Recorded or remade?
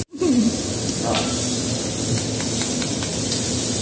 recorded